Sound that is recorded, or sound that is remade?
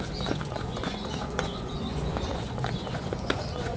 remade